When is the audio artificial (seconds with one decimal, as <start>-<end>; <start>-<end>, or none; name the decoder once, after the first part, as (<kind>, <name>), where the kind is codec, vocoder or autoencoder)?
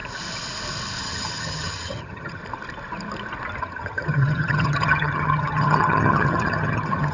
1.0-2.4 (vocoder, HiFi-GAN); 3.6-7.1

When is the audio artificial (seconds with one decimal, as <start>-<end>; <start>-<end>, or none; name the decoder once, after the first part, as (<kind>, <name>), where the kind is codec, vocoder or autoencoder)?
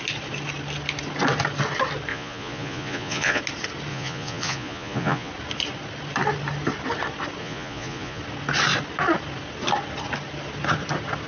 2.1-3.4 (vocoder, Vocos); 3.9-5.3; 7.4-8.2